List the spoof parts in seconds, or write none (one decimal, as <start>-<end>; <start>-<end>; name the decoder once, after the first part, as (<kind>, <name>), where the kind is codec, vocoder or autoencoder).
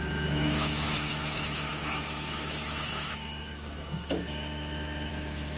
0.0-5.6 (autoencoder, DAC-VAE)